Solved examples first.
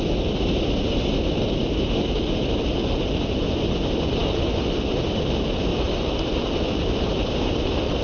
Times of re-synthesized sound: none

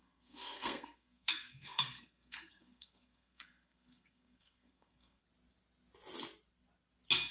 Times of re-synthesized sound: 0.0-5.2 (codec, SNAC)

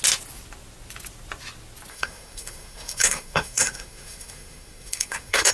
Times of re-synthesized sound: 1.9-5.5 (codec, SNAC)